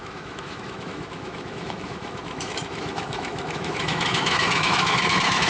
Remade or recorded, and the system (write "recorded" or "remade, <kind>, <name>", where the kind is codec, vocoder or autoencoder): remade, autoencoder, DAC-VAE